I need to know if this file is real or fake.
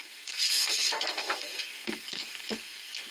fake